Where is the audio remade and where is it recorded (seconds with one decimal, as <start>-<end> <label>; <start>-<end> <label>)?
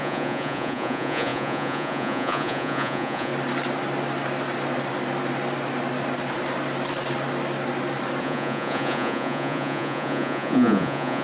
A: 0.0-3.3 remade; 3.3-8.2 recorded; 8.2-11.2 remade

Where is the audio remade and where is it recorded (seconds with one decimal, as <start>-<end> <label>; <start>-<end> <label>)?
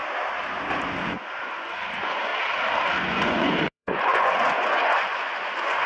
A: 0.0-1.0 recorded; 1.0-2.3 remade; 2.3-3.0 recorded; 3.0-5.9 remade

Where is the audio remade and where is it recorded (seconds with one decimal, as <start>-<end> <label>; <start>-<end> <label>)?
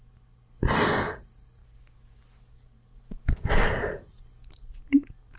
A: 0.0-5.4 recorded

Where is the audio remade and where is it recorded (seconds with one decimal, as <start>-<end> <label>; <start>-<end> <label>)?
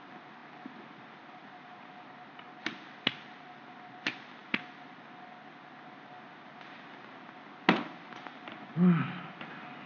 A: 0.0-9.9 recorded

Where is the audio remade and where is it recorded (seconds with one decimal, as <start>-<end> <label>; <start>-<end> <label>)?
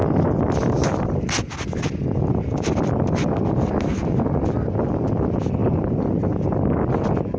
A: 0.0-7.4 recorded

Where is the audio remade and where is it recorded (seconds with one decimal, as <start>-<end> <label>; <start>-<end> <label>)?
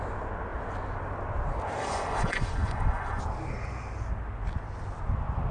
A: 0.0-1.8 recorded; 1.8-3.2 remade; 3.2-5.5 recorded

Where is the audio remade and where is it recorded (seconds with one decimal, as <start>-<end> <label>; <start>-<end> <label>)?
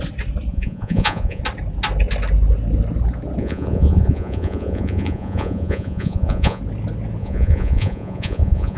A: 0.0-0.5 recorded; 0.5-1.4 remade; 1.4-3.4 recorded; 3.4-6.6 remade; 6.6-7.2 recorded; 7.2-8.8 remade